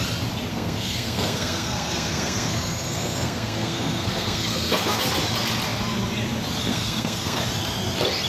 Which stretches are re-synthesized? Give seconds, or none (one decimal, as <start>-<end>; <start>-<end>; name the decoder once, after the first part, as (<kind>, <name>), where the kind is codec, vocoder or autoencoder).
0.5-5.0 (codec, SNAC); 6.7-7.4